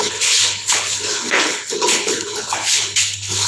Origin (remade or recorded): remade